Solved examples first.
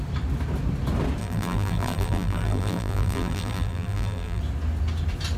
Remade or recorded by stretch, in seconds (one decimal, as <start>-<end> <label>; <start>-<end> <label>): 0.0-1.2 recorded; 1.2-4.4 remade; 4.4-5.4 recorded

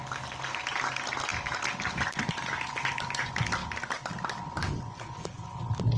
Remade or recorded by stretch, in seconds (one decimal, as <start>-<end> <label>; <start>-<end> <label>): 0.0-6.0 recorded

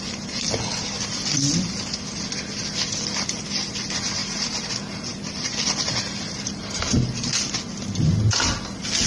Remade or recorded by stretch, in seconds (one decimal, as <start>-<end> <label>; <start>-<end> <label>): 0.0-4.2 recorded; 4.2-4.7 remade; 4.7-9.1 recorded

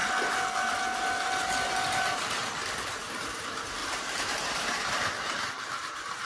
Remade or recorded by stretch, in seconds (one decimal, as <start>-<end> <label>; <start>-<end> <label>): 0.0-3.8 recorded; 3.8-5.5 remade; 5.5-6.3 recorded